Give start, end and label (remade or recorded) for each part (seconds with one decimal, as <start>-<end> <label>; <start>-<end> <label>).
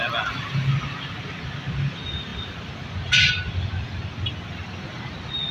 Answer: 0.0-5.5 recorded